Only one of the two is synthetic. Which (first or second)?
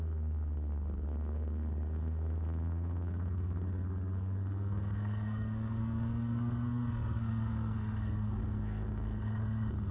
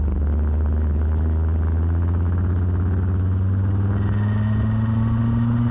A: first